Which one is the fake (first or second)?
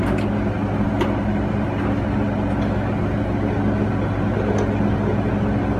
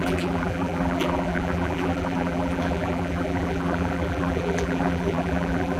second